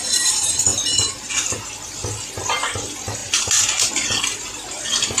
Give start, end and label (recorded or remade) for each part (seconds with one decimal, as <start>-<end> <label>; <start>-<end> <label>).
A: 0.0-0.7 recorded; 0.7-1.3 remade; 1.3-5.2 recorded